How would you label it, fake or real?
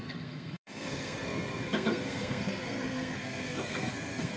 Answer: fake